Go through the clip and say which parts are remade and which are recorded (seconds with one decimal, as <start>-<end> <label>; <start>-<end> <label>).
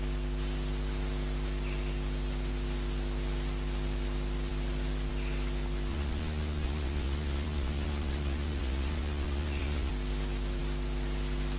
0.0-5.9 recorded; 5.9-9.9 remade; 9.9-11.6 recorded